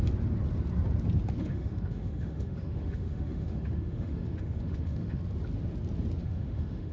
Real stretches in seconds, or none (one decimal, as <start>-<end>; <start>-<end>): 0.0-1.4; 5.2-6.2